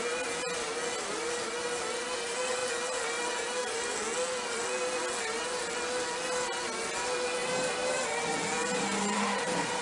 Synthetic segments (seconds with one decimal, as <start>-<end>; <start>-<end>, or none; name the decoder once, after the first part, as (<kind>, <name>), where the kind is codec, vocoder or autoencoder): 7.4-8.0 (vocoder, BigVGAN v2); 8.6-9.8